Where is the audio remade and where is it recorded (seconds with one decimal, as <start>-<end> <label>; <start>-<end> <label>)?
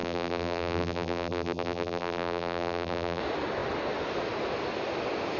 0.0-3.2 remade; 3.2-5.4 recorded